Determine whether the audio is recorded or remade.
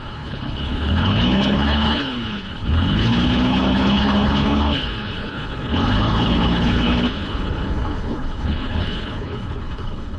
remade